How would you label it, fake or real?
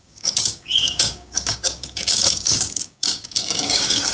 fake